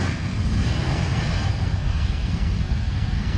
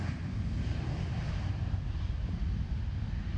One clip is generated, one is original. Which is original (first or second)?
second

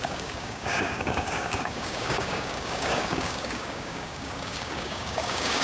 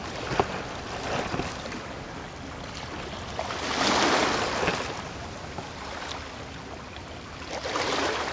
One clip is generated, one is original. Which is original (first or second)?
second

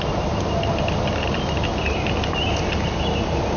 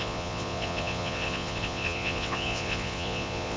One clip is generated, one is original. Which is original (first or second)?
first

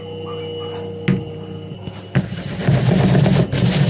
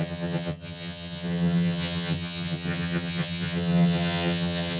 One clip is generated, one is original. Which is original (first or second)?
first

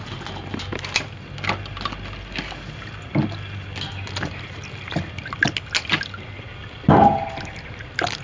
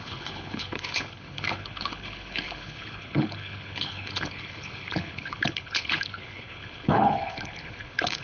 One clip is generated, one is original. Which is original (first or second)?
first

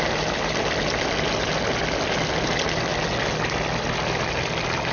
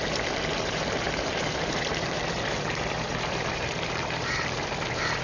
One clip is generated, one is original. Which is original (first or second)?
first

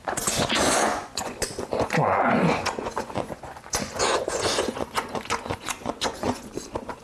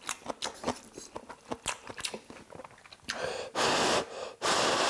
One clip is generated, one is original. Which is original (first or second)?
second